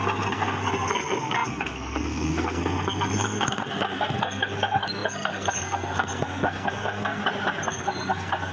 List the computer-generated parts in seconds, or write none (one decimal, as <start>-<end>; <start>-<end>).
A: 0.0-7.2; 7.7-8.5